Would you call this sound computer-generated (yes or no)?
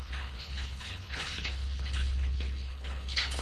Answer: yes